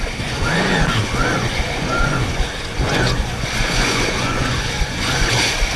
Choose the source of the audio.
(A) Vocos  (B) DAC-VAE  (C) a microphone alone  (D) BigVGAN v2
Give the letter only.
A